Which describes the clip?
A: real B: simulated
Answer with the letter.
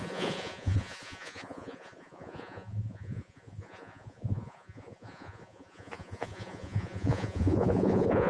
B